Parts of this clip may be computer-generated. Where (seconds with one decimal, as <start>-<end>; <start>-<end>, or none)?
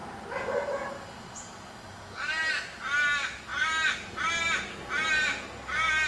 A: none